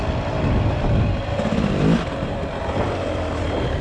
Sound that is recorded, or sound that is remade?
recorded